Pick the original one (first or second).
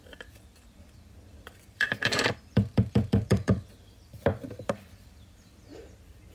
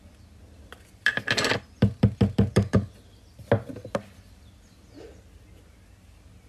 second